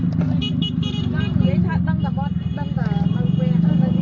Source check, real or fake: real